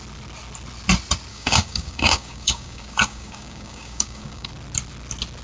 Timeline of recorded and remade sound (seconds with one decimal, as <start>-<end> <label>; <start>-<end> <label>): 0.0-1.3 recorded; 1.3-4.5 remade; 4.5-5.4 recorded